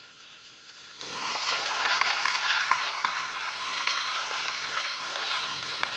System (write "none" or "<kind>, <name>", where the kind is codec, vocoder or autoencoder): codec, SNAC